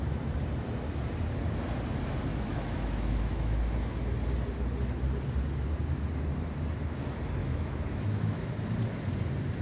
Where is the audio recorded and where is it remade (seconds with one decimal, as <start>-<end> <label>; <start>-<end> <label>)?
0.0-2.3 recorded; 2.3-3.6 remade; 3.6-7.4 recorded; 7.4-8.5 remade; 8.5-9.6 recorded